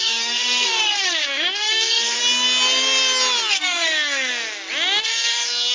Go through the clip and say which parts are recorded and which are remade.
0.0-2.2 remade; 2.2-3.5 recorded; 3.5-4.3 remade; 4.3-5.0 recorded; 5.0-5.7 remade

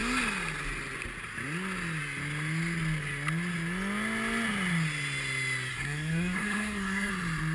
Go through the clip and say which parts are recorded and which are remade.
0.0-5.7 recorded; 5.7-7.1 remade; 7.1-7.5 recorded

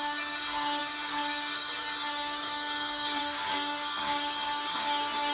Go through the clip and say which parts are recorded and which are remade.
0.0-5.3 remade

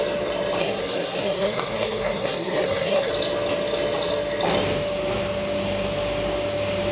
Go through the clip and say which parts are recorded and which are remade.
0.0-0.6 recorded; 0.6-3.1 remade; 3.1-6.9 recorded

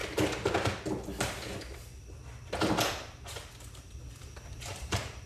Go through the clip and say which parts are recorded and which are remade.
0.0-2.9 recorded; 2.9-5.3 remade

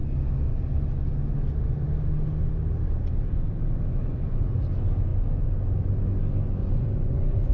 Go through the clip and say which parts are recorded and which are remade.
0.0-6.6 recorded; 6.6-7.5 remade